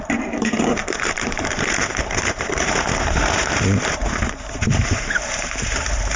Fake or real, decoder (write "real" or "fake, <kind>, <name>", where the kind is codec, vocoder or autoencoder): fake, vocoder, BigVGAN v2